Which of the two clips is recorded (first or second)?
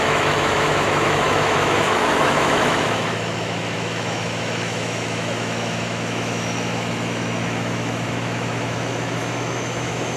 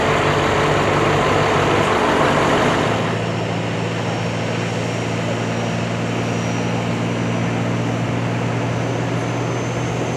second